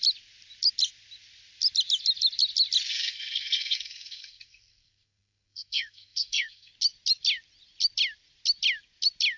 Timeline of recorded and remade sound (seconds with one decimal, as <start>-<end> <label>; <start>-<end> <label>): 0.0-2.9 recorded; 2.9-6.7 remade; 6.7-9.4 recorded